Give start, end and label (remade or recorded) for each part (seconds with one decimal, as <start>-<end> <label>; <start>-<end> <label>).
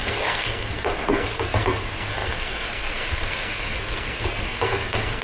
0.0-5.2 remade